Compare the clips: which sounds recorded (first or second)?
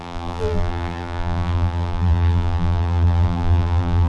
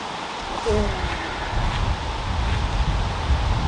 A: second